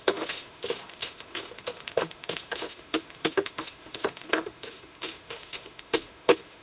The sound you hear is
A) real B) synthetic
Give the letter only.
B